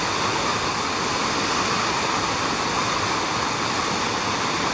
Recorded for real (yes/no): yes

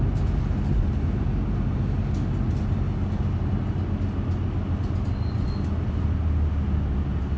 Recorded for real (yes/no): yes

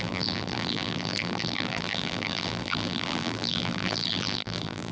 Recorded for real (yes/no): no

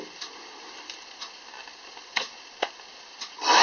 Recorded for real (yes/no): yes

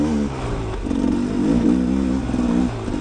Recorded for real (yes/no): yes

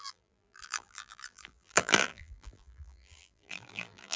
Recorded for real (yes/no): no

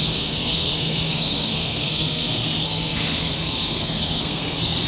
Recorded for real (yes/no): no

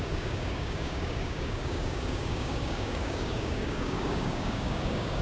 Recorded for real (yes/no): no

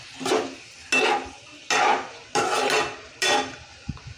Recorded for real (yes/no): yes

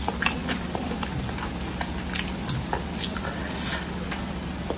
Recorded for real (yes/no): yes